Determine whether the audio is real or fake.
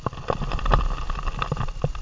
real